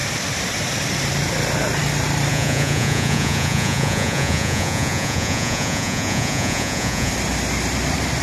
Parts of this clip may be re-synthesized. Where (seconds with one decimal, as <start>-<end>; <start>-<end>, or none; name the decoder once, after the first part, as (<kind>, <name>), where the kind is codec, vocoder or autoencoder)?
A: 2.3-7.1 (vocoder, Vocos)